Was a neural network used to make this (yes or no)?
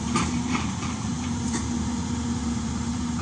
yes